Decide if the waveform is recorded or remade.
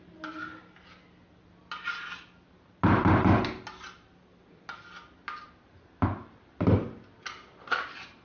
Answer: recorded